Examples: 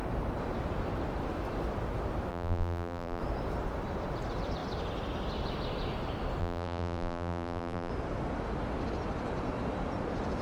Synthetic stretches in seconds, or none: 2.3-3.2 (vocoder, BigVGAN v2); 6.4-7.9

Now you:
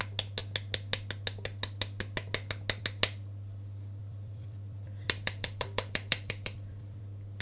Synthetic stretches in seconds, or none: 4.0-7.0 (vocoder, BigVGAN v2)

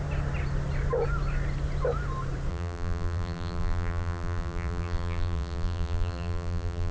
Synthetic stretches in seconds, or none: 2.5-6.9 (vocoder, BigVGAN v2)

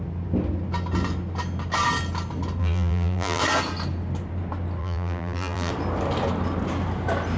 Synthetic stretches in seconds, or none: 2.6-3.4 (vocoder, BigVGAN v2); 4.8-5.7

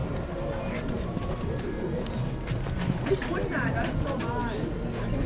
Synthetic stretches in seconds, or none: 0.0-4.4 (vocoder, BigVGAN v2)